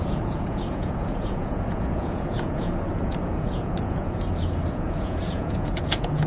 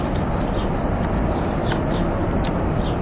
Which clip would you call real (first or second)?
second